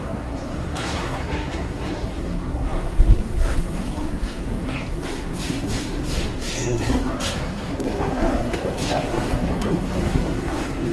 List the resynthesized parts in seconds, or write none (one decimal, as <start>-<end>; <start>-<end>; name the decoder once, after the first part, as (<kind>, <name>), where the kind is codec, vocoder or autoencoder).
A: 0.0-10.9 (codec, SNAC)